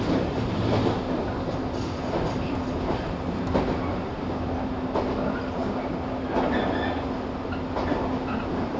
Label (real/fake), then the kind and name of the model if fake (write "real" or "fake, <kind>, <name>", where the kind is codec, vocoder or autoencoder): real